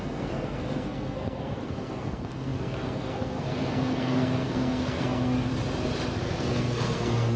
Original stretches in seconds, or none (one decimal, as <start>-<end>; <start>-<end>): 5.5-6.2